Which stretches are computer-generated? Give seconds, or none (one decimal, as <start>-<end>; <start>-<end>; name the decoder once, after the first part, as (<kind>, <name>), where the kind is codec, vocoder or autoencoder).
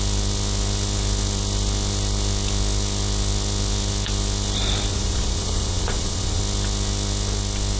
4.9-6.4 (vocoder, Vocos)